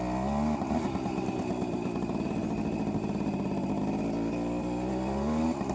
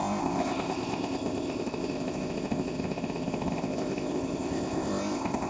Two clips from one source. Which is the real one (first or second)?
first